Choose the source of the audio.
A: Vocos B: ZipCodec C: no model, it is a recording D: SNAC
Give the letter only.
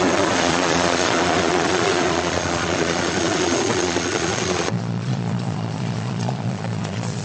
A